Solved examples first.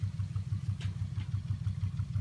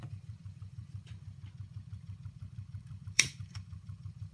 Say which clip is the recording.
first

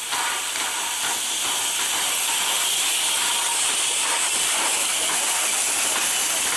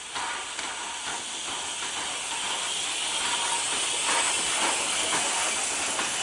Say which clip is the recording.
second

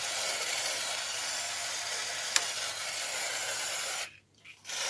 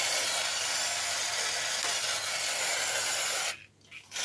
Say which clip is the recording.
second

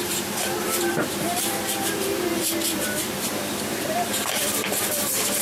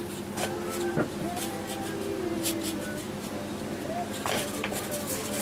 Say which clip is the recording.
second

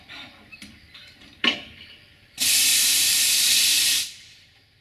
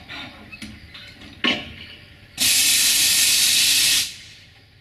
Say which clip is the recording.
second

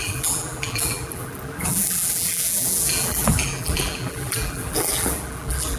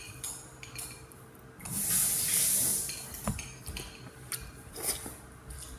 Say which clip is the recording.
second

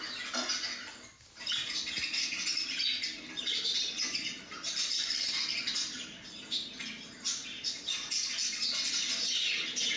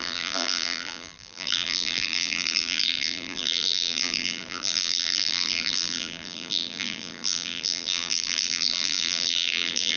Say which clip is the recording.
first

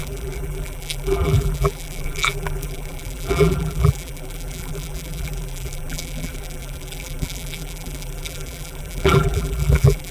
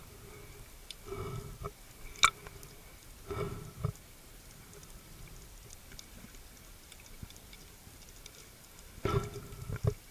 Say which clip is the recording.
second